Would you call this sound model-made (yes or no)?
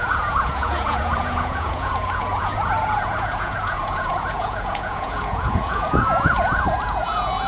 yes